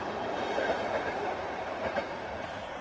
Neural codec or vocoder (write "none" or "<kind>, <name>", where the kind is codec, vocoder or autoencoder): vocoder, Vocos